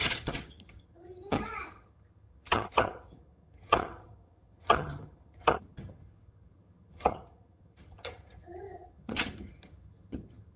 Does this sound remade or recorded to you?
remade